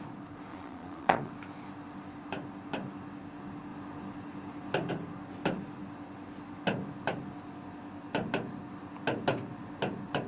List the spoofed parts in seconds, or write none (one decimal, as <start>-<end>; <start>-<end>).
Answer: 0.5-1.3